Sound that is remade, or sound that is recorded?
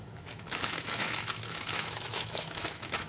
remade